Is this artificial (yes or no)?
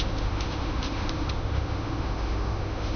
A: yes